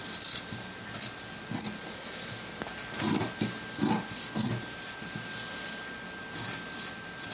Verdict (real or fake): real